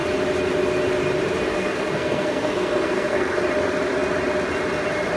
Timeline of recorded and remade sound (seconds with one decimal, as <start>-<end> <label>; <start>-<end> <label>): 0.0-1.5 recorded; 1.5-3.4 remade; 3.4-5.2 recorded